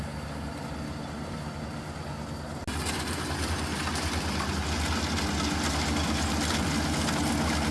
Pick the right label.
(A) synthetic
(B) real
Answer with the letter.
B